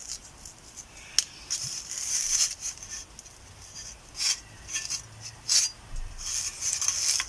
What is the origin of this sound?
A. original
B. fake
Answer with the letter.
A